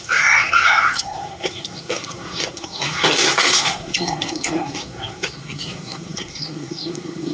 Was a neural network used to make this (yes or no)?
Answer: yes